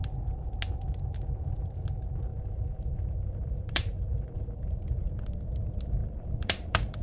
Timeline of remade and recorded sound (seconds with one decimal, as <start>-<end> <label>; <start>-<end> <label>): 0.0-2.3 recorded; 2.3-5.1 remade; 5.1-6.0 recorded; 6.0-7.0 remade